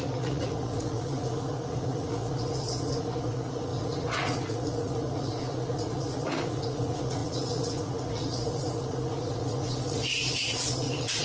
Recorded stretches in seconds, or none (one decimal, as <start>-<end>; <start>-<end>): none